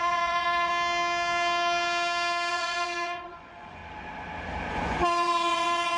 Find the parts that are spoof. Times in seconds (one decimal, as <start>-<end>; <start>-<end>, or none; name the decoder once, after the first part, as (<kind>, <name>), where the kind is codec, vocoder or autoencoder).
0.0-0.7 (vocoder, Vocos); 2.5-3.8; 4.7-6.0